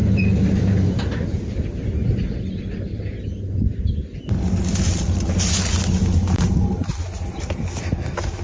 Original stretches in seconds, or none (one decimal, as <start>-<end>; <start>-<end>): 0.0-8.4